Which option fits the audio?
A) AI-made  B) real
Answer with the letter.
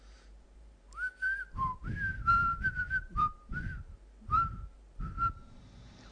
A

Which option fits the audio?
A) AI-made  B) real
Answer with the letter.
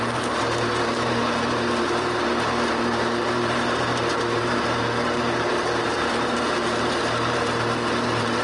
A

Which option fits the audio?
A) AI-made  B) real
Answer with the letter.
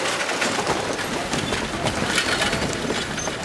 B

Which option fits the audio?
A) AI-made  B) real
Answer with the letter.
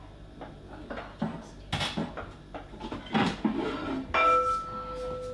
B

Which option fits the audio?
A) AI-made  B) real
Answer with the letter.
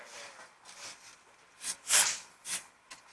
B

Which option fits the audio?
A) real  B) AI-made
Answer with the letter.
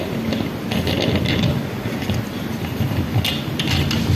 A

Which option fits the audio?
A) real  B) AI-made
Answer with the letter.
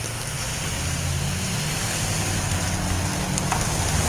A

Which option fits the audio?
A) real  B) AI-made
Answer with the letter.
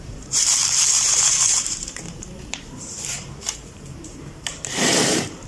B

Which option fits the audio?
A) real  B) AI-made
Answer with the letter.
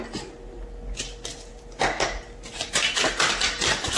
A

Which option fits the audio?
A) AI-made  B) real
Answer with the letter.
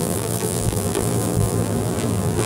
A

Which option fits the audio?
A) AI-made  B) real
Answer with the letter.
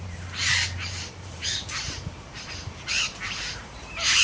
A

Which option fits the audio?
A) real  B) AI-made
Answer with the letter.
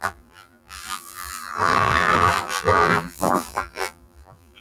B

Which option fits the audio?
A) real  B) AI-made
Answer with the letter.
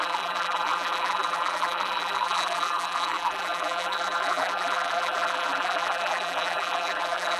B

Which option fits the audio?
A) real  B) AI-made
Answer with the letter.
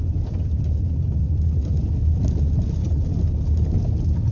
A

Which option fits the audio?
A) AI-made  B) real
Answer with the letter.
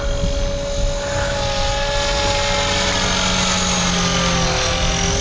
B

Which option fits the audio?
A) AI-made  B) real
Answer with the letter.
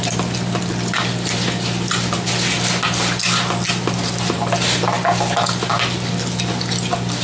B